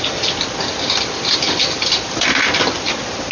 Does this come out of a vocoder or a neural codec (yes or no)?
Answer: no